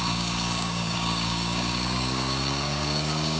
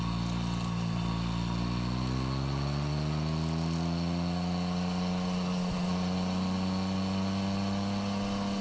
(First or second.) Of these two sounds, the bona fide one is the second